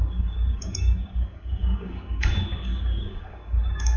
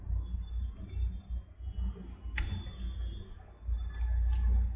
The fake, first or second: first